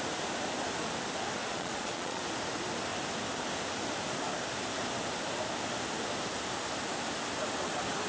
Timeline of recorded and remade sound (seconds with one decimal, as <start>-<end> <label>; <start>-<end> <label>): 0.0-1.4 recorded; 1.4-2.2 remade; 2.2-8.1 recorded